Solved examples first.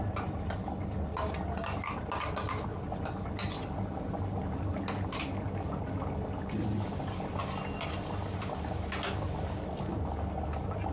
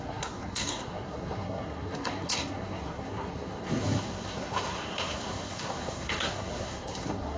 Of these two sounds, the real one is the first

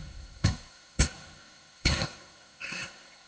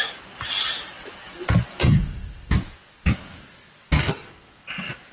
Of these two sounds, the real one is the second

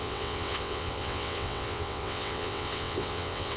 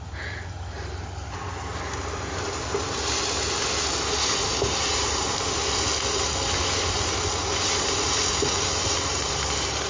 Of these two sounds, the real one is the second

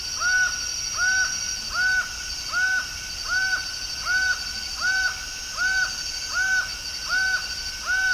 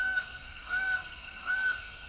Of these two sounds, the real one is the first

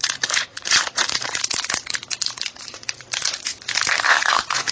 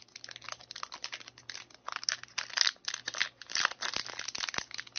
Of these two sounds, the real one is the second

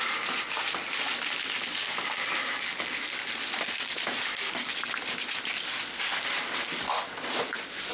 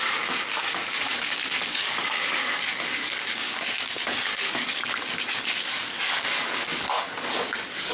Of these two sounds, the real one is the first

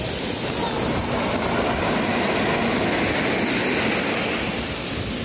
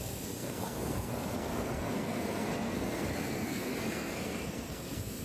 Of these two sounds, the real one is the first